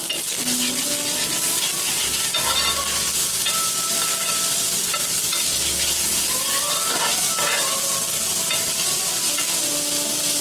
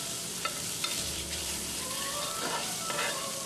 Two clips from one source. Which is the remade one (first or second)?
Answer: second